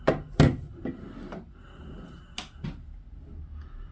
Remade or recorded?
recorded